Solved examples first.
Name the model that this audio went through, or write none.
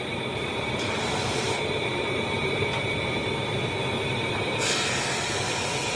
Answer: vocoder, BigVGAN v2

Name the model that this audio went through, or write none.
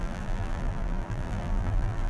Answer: vocoder, BigVGAN v2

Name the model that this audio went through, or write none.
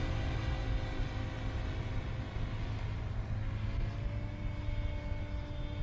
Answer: none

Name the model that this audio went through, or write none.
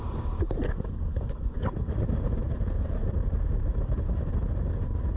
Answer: vocoder, BigVGAN v2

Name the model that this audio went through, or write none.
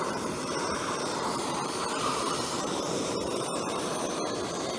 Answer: vocoder, BigVGAN v2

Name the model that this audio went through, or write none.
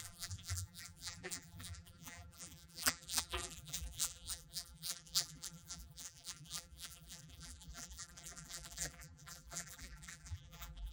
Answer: vocoder, BigVGAN v2